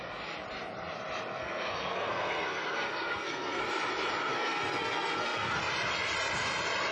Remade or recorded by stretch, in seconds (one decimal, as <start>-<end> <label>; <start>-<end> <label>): 0.0-1.4 recorded; 1.4-3.6 remade; 3.6-4.3 recorded; 4.3-5.6 remade; 5.6-6.9 recorded